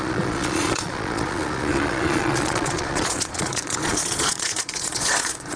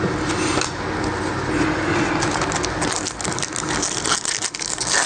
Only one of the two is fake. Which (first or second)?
first